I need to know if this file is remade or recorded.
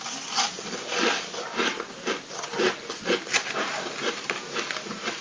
recorded